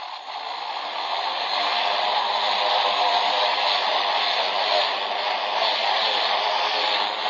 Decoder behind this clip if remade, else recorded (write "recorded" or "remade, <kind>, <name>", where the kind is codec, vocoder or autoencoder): recorded